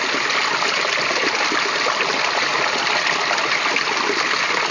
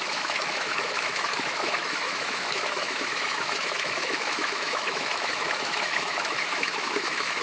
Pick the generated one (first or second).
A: second